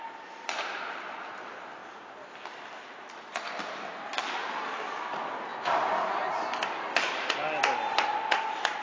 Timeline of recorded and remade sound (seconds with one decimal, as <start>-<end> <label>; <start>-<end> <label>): 0.0-8.8 recorded